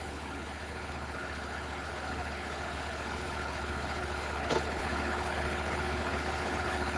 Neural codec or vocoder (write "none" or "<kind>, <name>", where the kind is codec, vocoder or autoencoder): codec, HILCodec